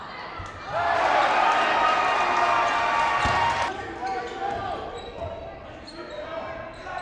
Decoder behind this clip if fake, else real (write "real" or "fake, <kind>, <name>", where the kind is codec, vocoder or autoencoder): real